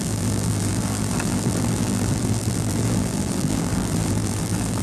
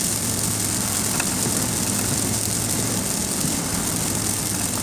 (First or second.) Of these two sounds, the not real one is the first